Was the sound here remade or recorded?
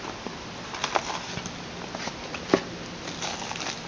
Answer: recorded